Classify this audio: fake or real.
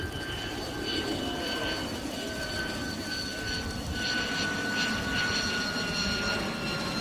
fake